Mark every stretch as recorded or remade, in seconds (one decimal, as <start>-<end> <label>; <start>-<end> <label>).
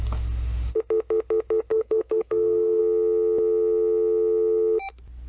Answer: 0.0-1.7 recorded; 1.7-2.8 remade; 2.8-5.3 recorded